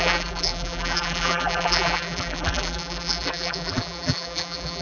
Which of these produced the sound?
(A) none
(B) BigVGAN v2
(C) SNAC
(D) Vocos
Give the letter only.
B